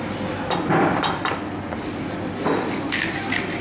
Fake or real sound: real